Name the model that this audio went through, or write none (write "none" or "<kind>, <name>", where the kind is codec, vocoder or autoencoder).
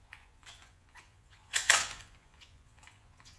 vocoder, Vocos